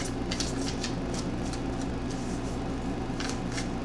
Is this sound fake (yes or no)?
no